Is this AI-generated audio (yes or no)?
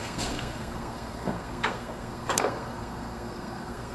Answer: yes